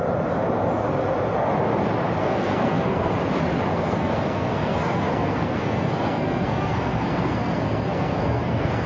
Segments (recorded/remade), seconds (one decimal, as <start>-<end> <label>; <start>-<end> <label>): 0.0-2.2 recorded; 2.2-3.1 remade; 3.1-3.7 recorded; 3.7-8.9 remade